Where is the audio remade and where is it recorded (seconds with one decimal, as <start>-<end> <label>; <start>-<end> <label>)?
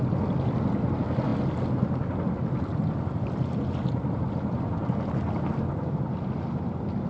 0.0-7.1 recorded